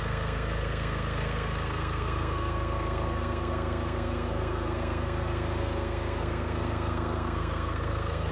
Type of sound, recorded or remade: remade